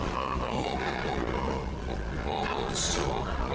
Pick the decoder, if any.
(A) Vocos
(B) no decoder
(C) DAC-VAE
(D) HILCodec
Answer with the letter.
A